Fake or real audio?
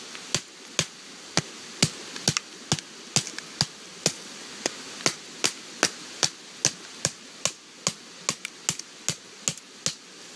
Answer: real